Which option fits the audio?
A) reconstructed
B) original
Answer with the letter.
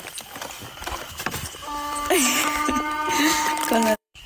A